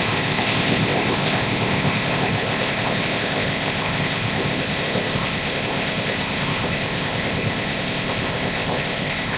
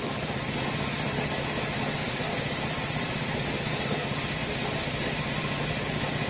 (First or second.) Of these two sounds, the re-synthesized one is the first